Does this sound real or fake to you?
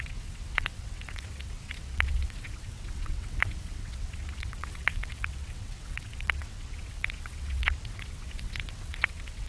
fake